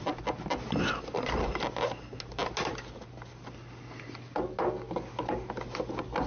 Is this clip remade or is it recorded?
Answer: recorded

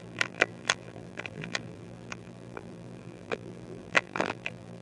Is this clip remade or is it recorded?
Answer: remade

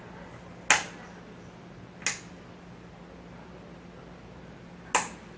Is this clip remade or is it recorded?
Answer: recorded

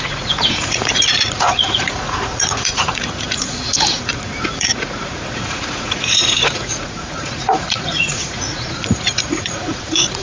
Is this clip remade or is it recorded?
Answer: remade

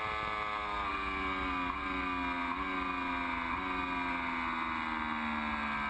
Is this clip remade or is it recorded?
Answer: recorded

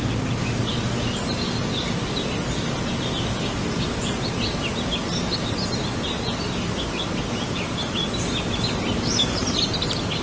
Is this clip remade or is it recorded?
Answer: recorded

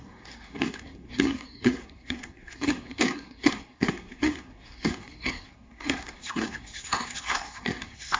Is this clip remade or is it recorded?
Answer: remade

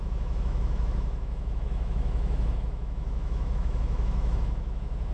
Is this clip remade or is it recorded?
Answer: remade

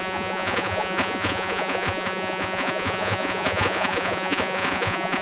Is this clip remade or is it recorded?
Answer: remade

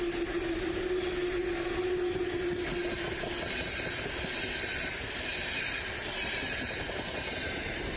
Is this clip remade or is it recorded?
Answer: recorded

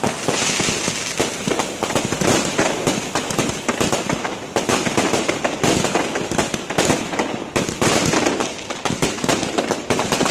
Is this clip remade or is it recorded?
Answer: recorded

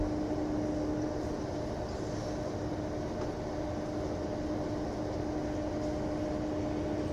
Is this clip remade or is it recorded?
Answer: recorded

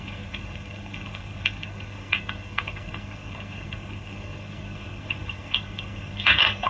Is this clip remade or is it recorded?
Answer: remade